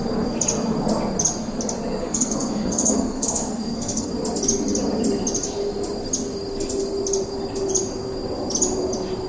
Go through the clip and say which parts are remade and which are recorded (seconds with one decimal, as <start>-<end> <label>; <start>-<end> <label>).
0.0-2.0 recorded; 2.0-4.1 remade; 4.1-9.3 recorded